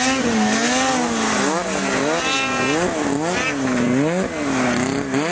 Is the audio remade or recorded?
recorded